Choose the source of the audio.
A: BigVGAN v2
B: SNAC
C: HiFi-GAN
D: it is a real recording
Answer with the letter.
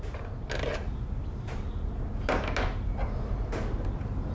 D